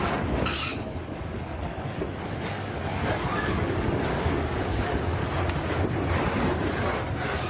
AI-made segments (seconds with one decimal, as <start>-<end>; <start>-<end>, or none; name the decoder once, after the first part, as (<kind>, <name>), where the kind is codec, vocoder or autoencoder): 0.0-5.2 (codec, DAC); 7.1-7.5

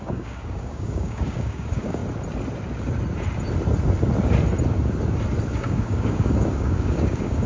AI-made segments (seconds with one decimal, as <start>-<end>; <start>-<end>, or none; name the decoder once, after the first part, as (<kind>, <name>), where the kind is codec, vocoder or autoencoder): 0.0-2.0 (codec, DAC); 5.5-7.5

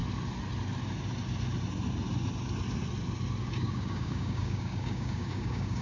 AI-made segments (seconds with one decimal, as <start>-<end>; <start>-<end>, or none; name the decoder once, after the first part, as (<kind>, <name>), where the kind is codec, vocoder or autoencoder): 3.4-5.8 (codec, DAC)

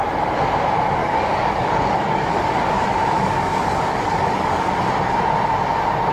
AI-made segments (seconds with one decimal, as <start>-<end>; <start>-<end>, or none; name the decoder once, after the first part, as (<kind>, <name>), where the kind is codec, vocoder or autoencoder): 1.0-4.7 (codec, DAC)

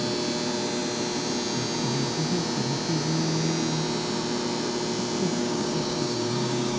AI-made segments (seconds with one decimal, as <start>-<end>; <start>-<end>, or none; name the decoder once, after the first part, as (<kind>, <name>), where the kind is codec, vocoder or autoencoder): 5.4-6.8 (codec, DAC)

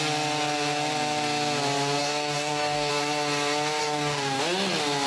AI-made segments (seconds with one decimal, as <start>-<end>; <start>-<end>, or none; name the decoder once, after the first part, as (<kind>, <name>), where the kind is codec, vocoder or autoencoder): 2.0-2.9 (codec, DAC); 3.8-4.4

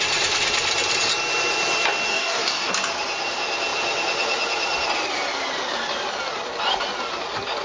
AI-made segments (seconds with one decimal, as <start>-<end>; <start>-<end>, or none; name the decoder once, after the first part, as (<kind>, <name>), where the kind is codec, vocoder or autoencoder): 2.1-2.7 (codec, DAC)